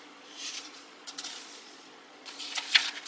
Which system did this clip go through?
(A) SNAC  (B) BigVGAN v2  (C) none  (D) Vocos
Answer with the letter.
D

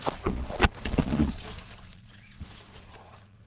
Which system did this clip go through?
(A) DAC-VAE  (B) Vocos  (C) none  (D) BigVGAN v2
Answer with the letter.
B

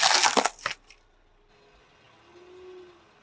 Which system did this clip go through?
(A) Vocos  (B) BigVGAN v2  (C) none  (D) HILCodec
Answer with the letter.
C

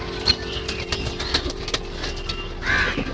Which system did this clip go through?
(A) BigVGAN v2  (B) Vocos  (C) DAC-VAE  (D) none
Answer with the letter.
D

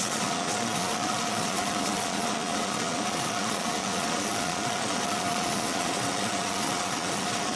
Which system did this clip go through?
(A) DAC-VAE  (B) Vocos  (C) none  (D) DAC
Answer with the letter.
B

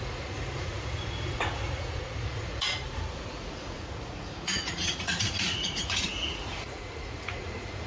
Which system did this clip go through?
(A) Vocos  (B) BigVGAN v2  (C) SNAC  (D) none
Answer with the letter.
A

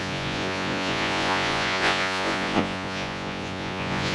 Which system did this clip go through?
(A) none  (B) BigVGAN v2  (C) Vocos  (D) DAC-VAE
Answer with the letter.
C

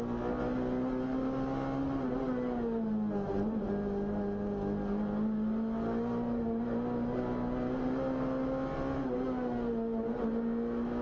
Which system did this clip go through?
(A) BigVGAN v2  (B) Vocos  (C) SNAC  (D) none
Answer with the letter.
D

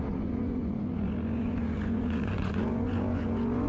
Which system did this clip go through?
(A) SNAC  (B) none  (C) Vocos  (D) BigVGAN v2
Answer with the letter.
C